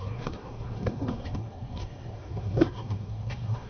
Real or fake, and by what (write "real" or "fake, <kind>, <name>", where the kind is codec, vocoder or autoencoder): fake, codec, SNAC